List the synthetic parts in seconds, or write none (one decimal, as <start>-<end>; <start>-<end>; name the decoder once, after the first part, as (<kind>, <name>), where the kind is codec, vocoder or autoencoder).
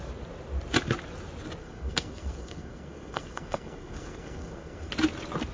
1.6-4.9 (codec, SNAC)